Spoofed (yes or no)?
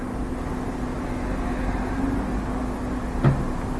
no